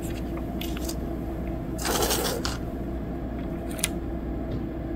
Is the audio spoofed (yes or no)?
no